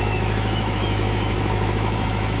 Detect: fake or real fake